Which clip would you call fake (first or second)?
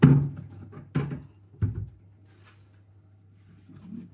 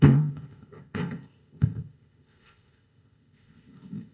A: second